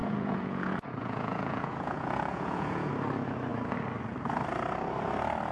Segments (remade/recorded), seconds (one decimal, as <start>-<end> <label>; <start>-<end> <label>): 0.0-2.9 remade; 2.9-5.5 recorded